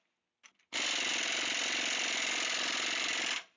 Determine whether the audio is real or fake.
real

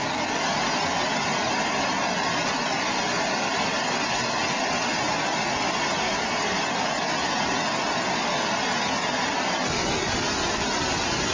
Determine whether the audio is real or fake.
real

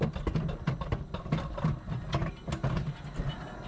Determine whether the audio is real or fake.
real